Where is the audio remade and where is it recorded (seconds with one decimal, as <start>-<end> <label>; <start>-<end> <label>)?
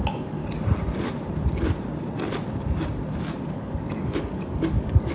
0.0-0.4 remade; 0.4-3.5 recorded; 3.5-5.1 remade